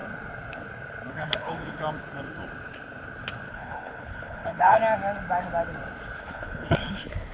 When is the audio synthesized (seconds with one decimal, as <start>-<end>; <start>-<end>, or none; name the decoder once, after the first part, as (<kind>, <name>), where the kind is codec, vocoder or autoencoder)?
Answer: 1.1-1.8 (codec, HILCodec); 3.5-4.8; 6.2-7.3